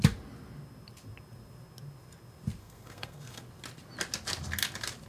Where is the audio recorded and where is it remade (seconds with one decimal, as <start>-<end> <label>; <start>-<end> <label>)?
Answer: 0.0-2.6 recorded; 2.6-3.4 remade; 3.4-5.1 recorded

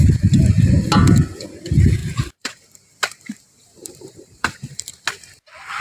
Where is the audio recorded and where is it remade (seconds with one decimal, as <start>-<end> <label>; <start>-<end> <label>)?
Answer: 0.0-2.0 recorded; 2.0-2.7 remade; 2.7-3.6 recorded; 3.6-4.9 remade; 4.9-5.8 recorded

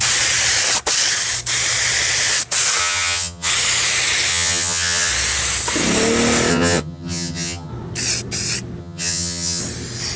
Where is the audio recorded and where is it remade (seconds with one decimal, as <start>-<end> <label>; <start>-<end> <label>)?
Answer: 0.0-2.8 recorded; 2.8-3.5 remade; 3.5-4.3 recorded; 4.3-5.1 remade; 5.1-6.5 recorded; 6.5-7.7 remade; 7.7-8.8 recorded; 8.8-9.6 remade; 9.6-10.2 recorded

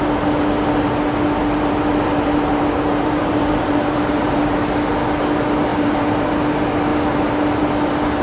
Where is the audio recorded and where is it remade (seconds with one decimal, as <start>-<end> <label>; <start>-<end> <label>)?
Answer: 0.0-1.4 recorded; 1.4-4.4 remade; 4.4-5.7 recorded; 5.7-6.3 remade; 6.3-6.9 recorded; 6.9-7.6 remade; 7.6-8.2 recorded

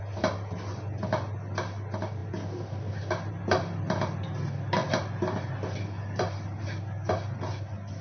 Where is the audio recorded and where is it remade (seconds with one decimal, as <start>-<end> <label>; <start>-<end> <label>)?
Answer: 0.0-8.0 recorded

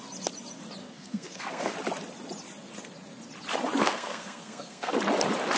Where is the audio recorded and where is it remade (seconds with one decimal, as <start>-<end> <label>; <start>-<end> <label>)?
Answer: 0.0-0.8 recorded; 0.8-1.7 remade; 1.7-3.8 recorded; 3.8-4.9 remade; 4.9-5.6 recorded

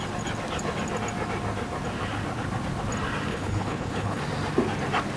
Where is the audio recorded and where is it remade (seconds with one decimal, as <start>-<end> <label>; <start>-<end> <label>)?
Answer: 0.0-3.3 recorded; 3.3-4.2 remade; 4.2-5.2 recorded